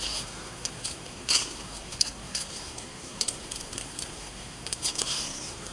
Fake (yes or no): yes